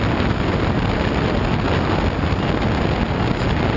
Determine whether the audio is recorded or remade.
recorded